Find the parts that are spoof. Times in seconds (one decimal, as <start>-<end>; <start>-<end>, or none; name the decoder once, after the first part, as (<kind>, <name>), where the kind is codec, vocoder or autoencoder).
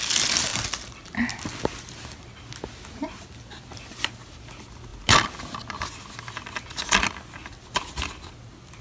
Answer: none